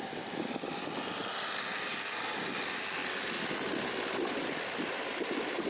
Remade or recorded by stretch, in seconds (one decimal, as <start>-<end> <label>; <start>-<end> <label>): 0.0-5.7 recorded